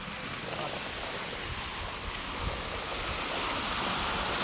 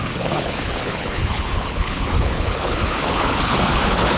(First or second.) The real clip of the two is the first